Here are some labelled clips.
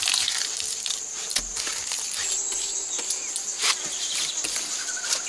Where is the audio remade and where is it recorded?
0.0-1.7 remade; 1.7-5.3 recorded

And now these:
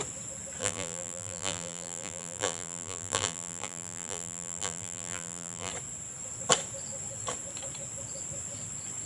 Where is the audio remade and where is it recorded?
0.0-0.6 recorded; 0.6-5.7 remade; 5.7-9.1 recorded

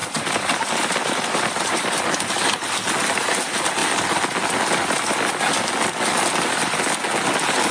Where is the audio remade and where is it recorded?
0.0-2.0 remade; 2.0-7.7 recorded

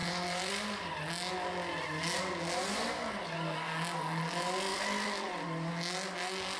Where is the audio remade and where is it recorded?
0.0-0.9 remade; 0.9-4.7 recorded; 4.7-5.7 remade; 5.7-6.6 recorded

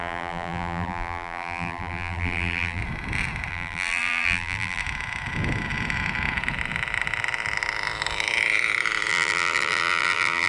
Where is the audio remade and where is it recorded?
0.0-2.8 remade; 2.8-3.5 recorded; 3.5-4.8 remade; 4.8-9.1 recorded; 9.1-10.5 remade